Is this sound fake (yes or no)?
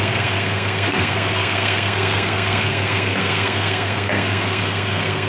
yes